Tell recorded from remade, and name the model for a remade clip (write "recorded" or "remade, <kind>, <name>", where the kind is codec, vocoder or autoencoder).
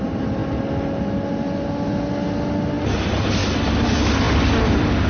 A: recorded